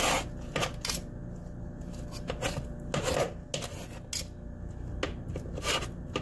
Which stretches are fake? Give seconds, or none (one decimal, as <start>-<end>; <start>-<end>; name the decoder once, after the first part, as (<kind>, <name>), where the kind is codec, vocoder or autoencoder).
none